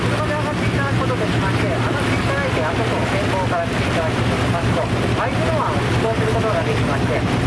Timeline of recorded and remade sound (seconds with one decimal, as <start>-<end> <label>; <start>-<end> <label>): 0.0-7.5 recorded